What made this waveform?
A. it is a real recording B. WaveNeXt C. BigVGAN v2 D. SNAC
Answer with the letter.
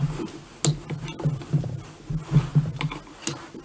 A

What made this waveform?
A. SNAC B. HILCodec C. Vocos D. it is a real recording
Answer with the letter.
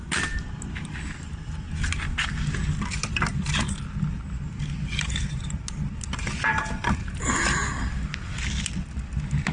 D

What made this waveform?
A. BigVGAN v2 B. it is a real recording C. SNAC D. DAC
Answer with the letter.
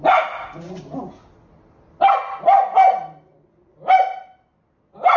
B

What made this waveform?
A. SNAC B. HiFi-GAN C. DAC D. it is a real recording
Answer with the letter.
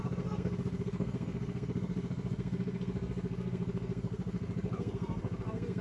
A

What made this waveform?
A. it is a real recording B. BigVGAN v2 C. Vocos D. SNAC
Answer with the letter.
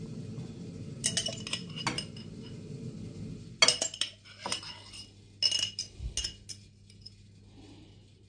A